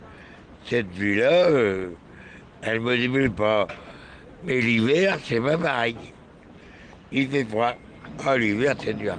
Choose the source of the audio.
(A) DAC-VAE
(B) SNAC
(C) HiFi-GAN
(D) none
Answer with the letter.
D